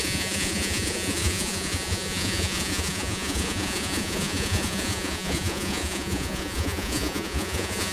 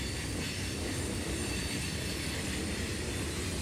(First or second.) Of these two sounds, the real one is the second